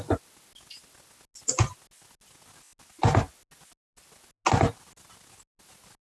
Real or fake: real